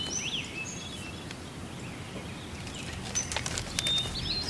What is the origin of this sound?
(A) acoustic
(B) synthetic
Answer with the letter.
A